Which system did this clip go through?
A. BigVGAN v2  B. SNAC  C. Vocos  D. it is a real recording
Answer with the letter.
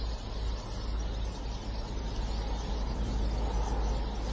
D